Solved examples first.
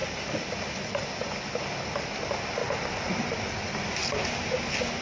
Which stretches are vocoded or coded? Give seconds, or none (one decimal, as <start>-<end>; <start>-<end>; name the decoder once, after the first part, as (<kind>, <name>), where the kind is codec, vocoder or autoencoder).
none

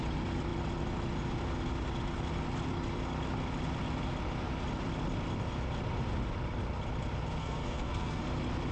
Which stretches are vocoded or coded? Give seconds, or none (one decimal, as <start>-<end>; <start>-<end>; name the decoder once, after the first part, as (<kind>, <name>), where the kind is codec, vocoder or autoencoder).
7.4-8.2 (codec, SNAC)

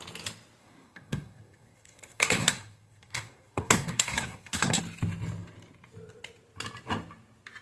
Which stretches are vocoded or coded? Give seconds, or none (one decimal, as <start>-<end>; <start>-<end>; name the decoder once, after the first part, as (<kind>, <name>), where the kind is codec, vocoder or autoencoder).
0.6-4.8 (codec, SNAC)